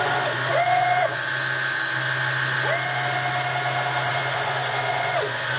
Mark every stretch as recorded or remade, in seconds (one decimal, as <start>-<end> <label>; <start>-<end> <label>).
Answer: 0.0-1.3 remade; 1.3-4.1 recorded; 4.1-5.6 remade